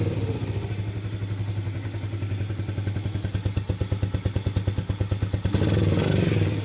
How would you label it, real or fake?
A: real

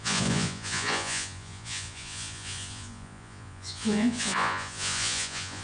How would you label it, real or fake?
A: fake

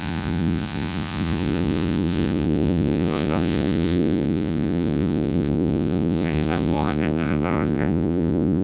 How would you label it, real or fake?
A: fake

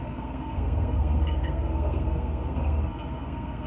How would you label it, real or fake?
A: fake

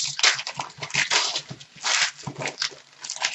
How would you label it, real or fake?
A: real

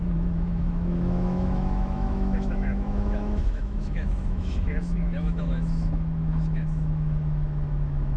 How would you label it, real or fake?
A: fake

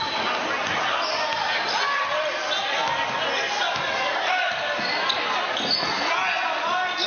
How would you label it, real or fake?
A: real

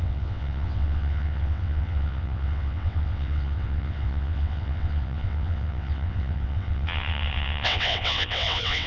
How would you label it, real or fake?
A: fake